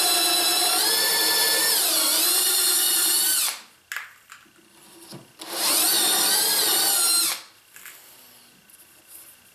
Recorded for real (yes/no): yes